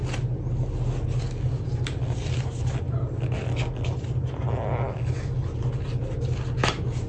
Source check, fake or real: real